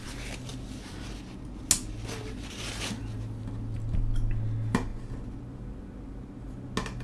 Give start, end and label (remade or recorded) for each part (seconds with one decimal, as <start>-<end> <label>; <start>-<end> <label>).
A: 0.0-7.0 recorded